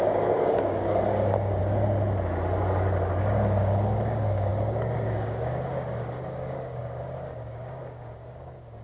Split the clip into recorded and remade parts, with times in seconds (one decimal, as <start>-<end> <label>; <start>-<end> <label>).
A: 0.0-1.6 remade; 1.6-3.1 recorded; 3.1-8.8 remade